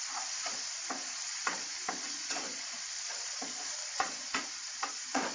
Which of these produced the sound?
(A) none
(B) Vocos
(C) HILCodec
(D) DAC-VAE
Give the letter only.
B